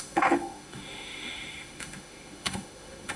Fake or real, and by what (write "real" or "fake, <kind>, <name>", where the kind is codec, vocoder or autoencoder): fake, autoencoder, DAC-VAE